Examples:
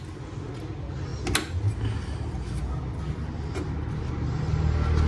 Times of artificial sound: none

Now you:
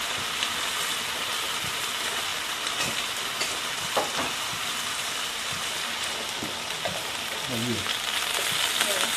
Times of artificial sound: none

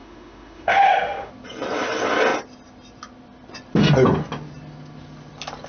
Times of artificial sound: 0.0-1.3

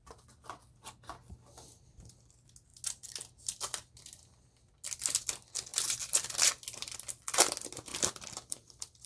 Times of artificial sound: 5.7-6.5; 7.9-9.1